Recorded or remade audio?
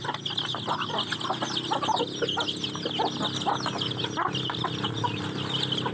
recorded